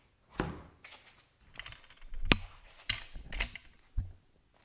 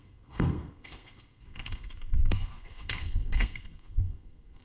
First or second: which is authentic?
first